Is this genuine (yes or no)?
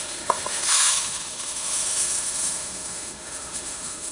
no